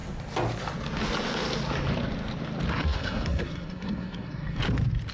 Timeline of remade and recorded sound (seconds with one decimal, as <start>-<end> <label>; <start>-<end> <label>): 0.0-2.7 recorded; 2.7-4.6 remade; 4.6-5.1 recorded